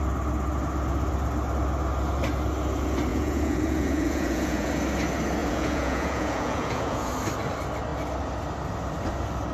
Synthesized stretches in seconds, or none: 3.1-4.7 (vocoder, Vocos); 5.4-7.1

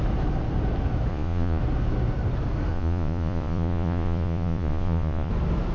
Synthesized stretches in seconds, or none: 1.1-1.6 (vocoder, Vocos); 2.7-5.3

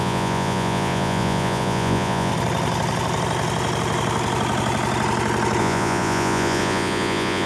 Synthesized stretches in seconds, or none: 0.0-2.3 (vocoder, Vocos); 5.6-7.5

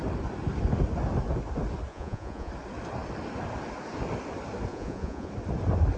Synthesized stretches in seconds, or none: 1.9-2.5 (vocoder, Vocos); 4.7-5.3

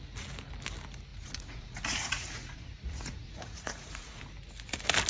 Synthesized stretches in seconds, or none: 1.1-4.2 (vocoder, Vocos)

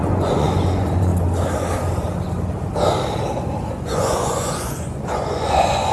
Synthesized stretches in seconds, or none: 0.0-1.1 (vocoder, Vocos); 3.7-5.9